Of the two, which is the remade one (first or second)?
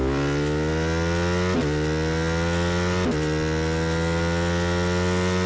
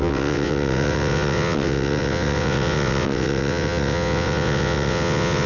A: second